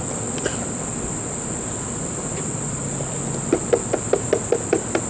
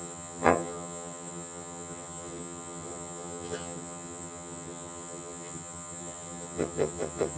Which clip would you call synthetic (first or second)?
second